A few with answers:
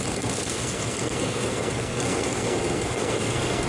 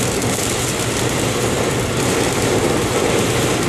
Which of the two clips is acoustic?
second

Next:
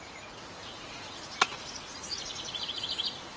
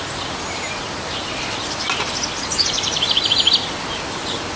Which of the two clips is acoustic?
second